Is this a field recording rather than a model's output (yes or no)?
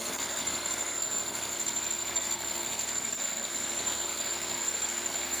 no